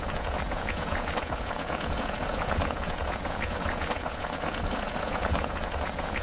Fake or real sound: fake